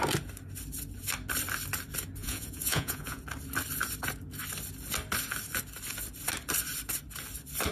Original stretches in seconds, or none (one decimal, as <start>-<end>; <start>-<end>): 0.0-2.2; 3.2-7.7